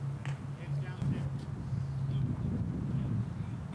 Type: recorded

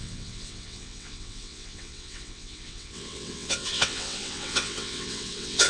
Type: remade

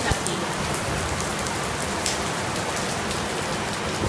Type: remade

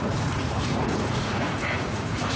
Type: remade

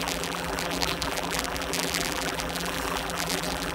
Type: remade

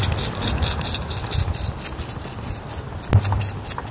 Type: recorded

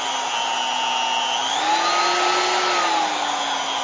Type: recorded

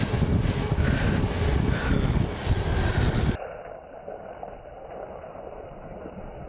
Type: recorded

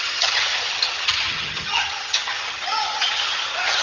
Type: remade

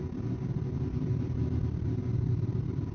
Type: recorded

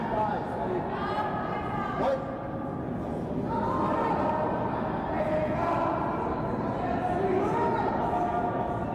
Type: recorded